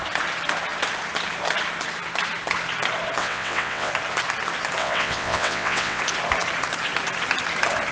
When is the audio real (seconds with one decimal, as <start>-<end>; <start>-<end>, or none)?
0.0-3.2; 3.9-4.8; 6.0-7.9